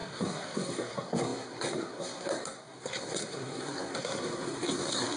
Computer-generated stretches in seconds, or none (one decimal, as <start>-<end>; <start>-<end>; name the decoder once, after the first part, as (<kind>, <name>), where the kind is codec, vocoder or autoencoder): 0.0-5.2 (codec, SNAC)